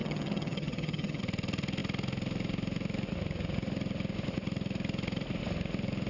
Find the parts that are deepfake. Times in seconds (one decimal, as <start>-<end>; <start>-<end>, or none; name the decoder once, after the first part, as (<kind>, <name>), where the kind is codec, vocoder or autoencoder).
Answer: 0.0-1.2 (vocoder, HiFi-GAN)